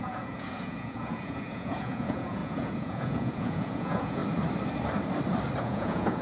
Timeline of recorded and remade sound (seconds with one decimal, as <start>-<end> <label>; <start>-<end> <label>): 0.0-4.2 remade; 4.2-5.6 recorded; 5.6-6.2 remade